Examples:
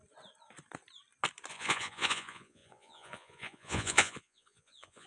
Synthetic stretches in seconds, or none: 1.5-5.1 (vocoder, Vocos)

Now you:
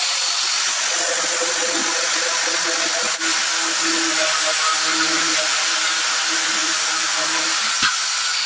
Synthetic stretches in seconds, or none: 4.9-5.8 (vocoder, BigVGAN v2); 6.6-7.4

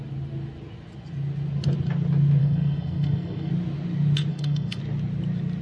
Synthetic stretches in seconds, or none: 2.4-3.5 (codec, SNAC); 4.3-4.8

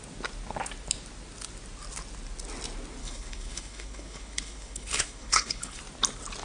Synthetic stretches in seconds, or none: 3.0-5.8 (codec, HILCodec)

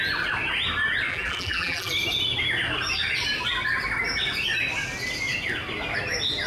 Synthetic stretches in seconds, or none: 1.1-1.9 (vocoder, BigVGAN v2)

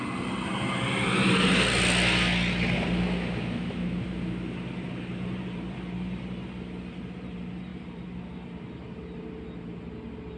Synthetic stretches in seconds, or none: none

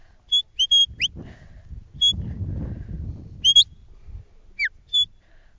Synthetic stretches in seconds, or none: none

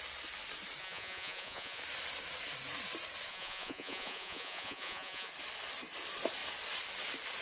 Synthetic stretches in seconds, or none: 0.8-1.8 (vocoder, Vocos); 3.3-5.3